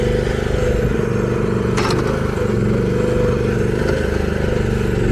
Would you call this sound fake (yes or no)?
no